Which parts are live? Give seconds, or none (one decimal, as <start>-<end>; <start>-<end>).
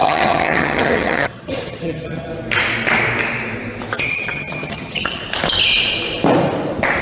2.3-4.0; 5.2-7.0